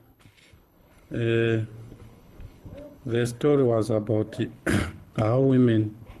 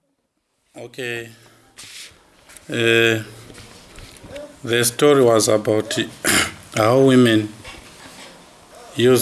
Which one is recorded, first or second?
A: second